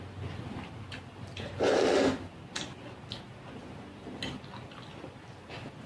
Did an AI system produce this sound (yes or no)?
no